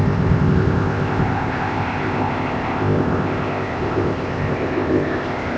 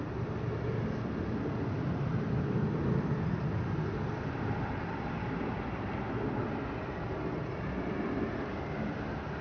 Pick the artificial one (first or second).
first